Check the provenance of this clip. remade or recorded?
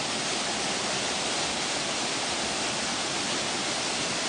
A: recorded